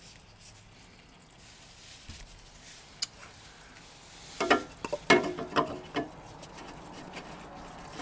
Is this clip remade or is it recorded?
recorded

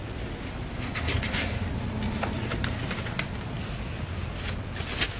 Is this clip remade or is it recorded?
recorded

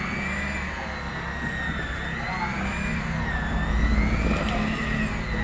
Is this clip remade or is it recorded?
recorded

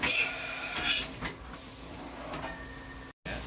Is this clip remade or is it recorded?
recorded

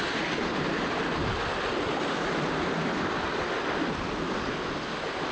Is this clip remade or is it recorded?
recorded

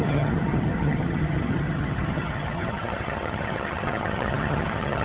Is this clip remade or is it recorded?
remade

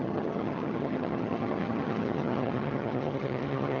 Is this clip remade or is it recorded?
remade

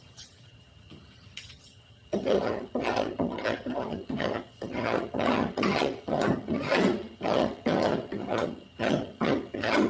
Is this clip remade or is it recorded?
remade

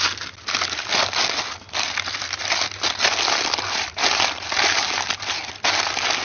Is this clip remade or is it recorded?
recorded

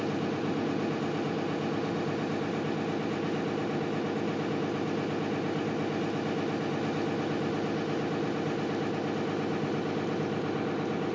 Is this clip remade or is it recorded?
recorded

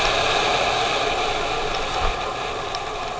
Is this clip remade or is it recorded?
recorded